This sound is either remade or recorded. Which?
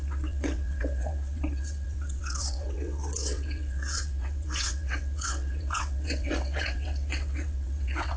remade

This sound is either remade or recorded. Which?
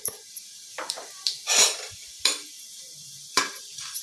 remade